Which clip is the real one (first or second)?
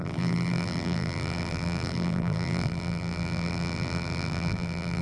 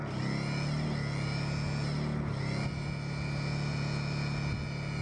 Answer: second